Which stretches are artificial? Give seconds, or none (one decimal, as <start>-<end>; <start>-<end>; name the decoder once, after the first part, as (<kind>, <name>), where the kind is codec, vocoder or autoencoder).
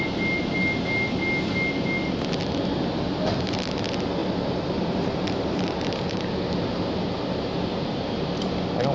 4.2-6.2 (vocoder, BigVGAN v2)